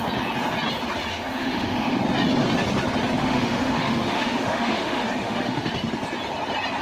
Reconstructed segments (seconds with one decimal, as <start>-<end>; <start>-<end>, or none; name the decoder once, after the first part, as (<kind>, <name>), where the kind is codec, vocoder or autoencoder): 1.1-2.0 (autoencoder, DAC-VAE); 3.2-5.7

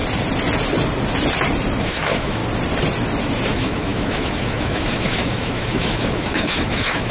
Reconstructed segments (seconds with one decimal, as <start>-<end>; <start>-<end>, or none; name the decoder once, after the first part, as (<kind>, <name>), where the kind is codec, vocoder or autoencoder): 1.8-2.4 (autoencoder, DAC-VAE); 3.5-7.1